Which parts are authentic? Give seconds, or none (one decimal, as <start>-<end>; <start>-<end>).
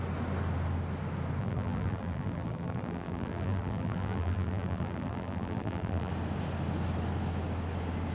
0.0-1.4; 6.1-8.1